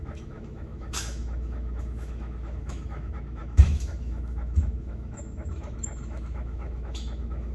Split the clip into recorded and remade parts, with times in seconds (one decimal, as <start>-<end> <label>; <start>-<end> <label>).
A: 0.0-7.5 remade